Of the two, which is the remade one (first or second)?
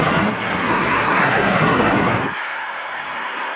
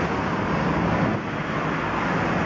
first